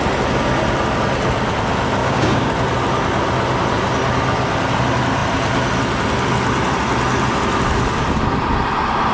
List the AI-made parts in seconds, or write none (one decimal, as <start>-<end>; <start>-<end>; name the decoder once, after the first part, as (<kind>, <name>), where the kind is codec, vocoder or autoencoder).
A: 2.0-2.5 (codec, DAC)